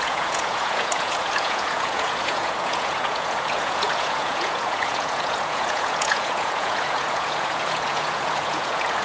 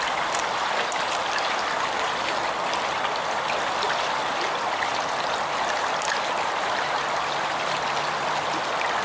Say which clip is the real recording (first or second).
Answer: second